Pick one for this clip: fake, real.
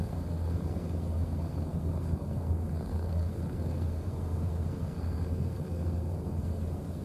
fake